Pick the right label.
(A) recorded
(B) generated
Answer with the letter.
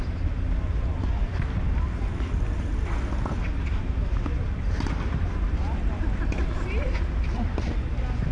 A